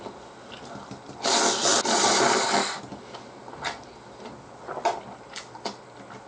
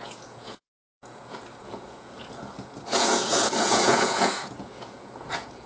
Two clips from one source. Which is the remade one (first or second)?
second